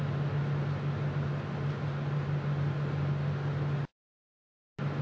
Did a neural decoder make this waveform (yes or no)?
no